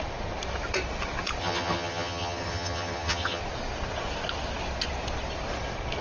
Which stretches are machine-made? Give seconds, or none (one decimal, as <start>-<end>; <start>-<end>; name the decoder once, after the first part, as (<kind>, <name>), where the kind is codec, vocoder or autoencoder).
1.4-3.4 (vocoder, HiFi-GAN)